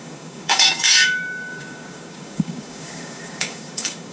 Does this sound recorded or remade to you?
remade